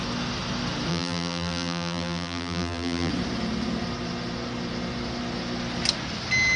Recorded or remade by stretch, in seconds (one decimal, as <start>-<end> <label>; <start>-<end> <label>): 0.0-0.9 recorded; 0.9-3.1 remade; 3.1-6.6 recorded